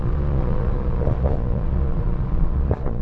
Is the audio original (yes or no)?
no